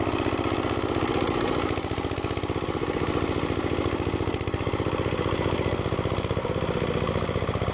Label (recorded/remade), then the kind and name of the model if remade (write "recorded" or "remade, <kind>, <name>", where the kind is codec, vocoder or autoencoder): recorded